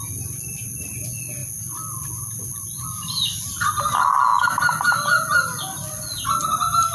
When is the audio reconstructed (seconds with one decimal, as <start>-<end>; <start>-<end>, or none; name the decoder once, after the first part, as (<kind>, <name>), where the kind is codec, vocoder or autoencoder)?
none